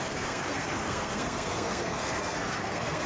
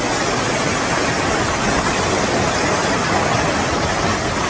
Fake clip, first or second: first